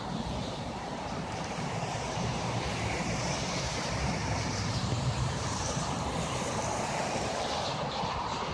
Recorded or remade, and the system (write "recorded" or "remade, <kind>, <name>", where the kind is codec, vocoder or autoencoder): remade, vocoder, BigVGAN v2